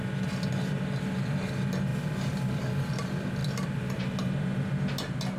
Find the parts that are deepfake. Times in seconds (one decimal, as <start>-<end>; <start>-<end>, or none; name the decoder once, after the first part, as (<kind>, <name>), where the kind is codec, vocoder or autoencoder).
3.4-4.0 (vocoder, BigVGAN v2)